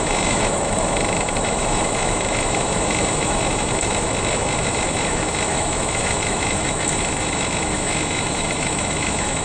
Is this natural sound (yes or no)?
no